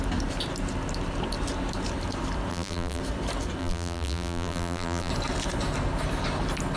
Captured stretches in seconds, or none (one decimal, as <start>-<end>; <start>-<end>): 0.0-2.5; 3.0-3.6; 5.1-6.8